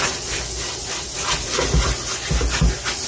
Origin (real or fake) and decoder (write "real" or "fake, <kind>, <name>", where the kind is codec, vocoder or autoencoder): real